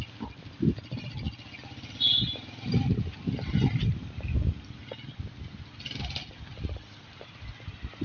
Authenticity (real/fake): real